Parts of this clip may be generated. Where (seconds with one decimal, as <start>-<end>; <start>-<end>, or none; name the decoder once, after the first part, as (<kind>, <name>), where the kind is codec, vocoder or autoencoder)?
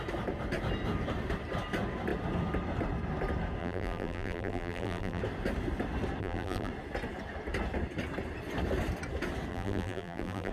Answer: 3.6-5.2 (vocoder, BigVGAN v2); 6.2-6.7; 9.5-10.5